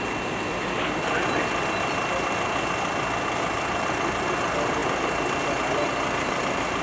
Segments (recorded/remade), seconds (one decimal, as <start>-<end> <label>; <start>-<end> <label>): 0.0-6.8 recorded